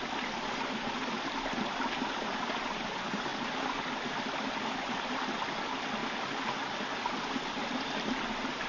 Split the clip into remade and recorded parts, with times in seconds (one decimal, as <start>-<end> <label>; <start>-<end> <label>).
0.0-8.7 recorded